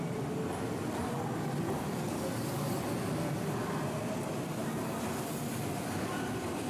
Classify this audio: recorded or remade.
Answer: recorded